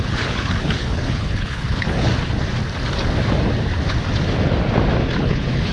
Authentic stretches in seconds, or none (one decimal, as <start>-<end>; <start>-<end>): 2.1-5.2